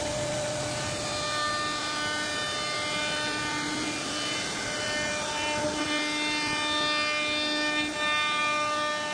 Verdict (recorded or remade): recorded